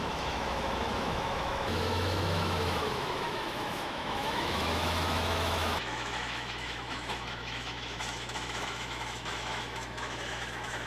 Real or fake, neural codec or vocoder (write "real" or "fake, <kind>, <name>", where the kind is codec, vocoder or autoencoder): fake, autoencoder, DAC-VAE